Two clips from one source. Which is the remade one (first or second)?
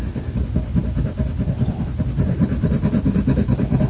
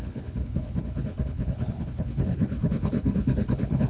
second